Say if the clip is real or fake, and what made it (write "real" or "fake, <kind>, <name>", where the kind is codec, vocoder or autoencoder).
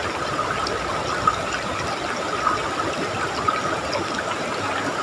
real